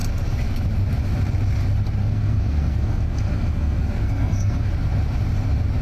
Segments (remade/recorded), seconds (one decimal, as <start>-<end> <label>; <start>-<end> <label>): 0.0-2.0 recorded; 2.0-4.7 remade; 4.7-5.8 recorded